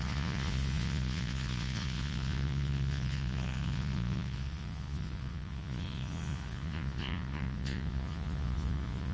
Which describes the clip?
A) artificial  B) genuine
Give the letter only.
A